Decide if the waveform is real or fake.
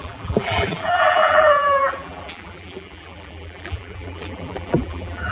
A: fake